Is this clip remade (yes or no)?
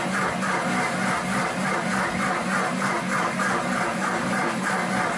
no